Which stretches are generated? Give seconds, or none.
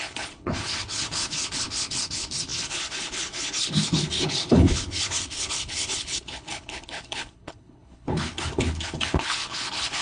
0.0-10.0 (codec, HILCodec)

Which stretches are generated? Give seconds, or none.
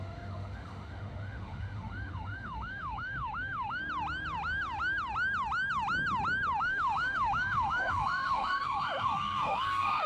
0.0-3.8 (autoencoder, DAC-VAE); 6.6-10.1